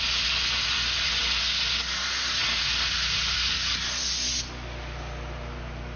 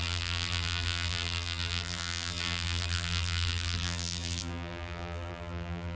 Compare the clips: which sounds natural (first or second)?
first